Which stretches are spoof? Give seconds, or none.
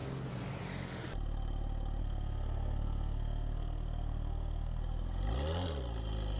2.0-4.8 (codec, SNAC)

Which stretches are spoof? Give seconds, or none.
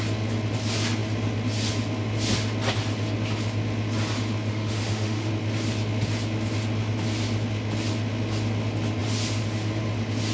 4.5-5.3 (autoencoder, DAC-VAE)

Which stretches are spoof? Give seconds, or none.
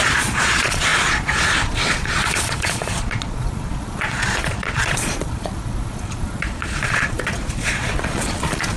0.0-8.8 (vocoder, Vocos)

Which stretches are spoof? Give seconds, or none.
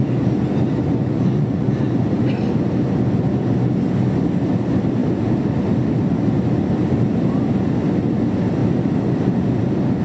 1.0-1.9 (vocoder, Vocos)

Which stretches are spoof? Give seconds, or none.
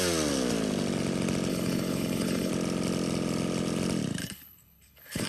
1.5-2.5 (codec, HILCodec); 4.2-5.3